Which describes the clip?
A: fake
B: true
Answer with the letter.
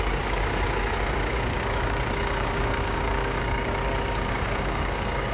A